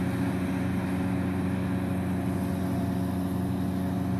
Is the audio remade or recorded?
recorded